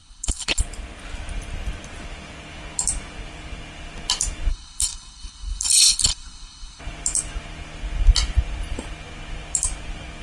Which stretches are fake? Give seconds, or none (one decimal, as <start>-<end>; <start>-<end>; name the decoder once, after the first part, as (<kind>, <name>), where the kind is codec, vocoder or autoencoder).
0.0-0.6 (codec, HILCodec); 4.5-6.8